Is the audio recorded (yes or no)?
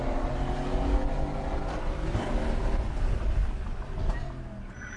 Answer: yes